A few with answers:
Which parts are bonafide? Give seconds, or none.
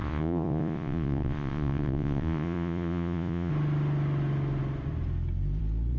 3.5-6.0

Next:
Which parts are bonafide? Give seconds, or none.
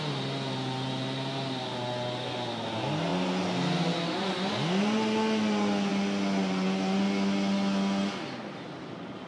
0.0-9.3